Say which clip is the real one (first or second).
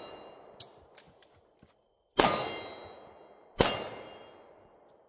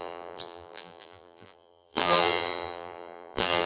first